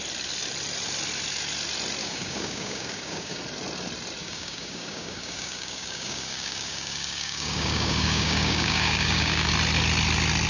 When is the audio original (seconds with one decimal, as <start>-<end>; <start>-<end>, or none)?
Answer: 0.0-2.0; 3.4-4.2; 9.5-10.5

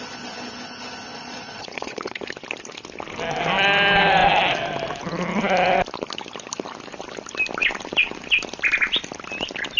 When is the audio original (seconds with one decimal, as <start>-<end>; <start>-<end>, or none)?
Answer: 0.0-1.1; 2.2-9.8

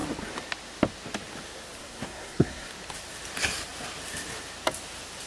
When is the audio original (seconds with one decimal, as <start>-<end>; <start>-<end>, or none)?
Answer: 0.0-1.8; 2.7-5.3